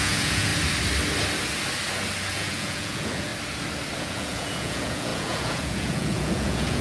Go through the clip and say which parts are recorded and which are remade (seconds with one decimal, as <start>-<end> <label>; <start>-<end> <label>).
0.0-0.5 remade; 0.5-2.3 recorded; 2.3-3.3 remade; 3.3-4.0 recorded; 4.0-6.8 remade